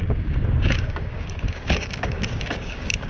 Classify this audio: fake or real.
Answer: fake